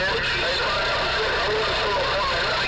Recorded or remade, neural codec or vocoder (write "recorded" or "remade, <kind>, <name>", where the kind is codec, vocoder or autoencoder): recorded